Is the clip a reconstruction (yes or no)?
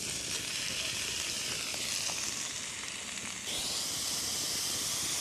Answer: yes